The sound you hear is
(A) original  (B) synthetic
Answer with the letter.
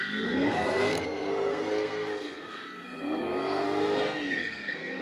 B